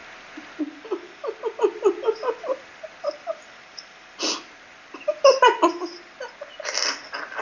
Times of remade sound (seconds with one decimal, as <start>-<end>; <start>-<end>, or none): 0.0-0.6; 2.5-5.7